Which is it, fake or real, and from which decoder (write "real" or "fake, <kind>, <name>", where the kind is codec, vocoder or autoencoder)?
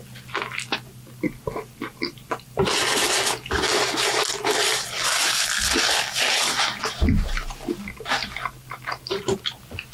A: real